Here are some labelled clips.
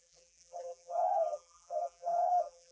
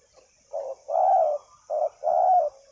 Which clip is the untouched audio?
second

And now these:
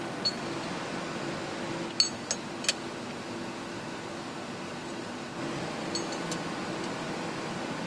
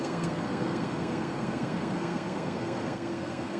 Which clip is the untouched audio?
first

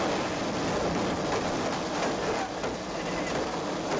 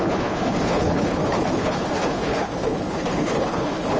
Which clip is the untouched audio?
first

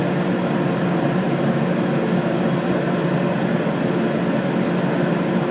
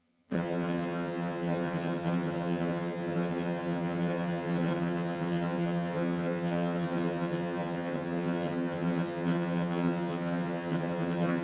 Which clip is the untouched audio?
first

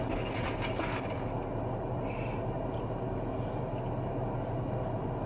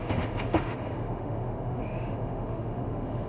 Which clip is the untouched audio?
first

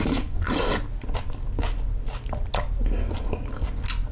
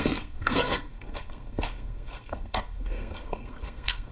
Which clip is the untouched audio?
first